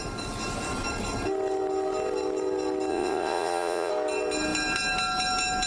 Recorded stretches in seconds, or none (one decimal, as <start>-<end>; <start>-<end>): 0.0-2.9; 3.9-5.7